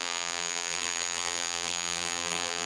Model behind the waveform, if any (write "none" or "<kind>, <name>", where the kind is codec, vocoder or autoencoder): vocoder, BigVGAN v2